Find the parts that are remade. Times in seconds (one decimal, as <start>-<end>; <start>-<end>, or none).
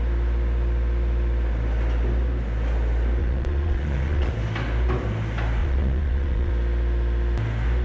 3.2-4.3; 5.6-6.5